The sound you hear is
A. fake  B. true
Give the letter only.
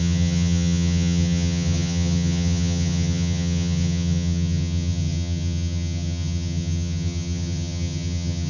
A